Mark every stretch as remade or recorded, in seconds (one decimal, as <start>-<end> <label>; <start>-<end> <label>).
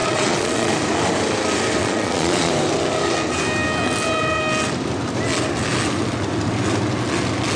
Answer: 0.0-0.7 remade; 0.7-1.8 recorded; 1.8-2.5 remade; 2.5-7.6 recorded